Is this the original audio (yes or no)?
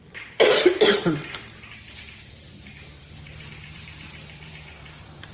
no